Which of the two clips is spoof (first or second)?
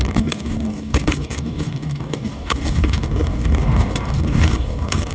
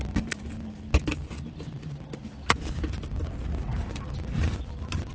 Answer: first